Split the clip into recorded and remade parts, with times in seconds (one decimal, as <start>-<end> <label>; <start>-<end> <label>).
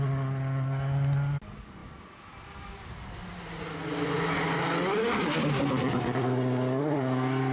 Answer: 0.0-7.5 recorded